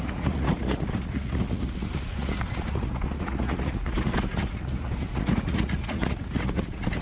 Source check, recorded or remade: remade